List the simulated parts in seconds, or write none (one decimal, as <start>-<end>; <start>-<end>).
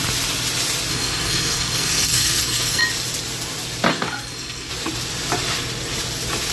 0.9-2.8; 3.9-4.7